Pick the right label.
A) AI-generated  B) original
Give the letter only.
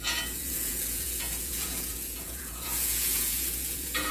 A